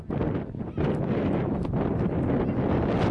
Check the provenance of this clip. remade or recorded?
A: recorded